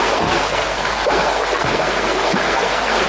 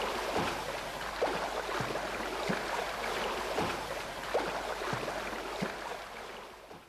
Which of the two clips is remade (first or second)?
first